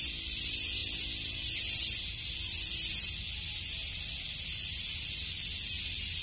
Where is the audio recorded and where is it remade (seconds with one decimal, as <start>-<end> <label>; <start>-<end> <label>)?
0.0-6.2 recorded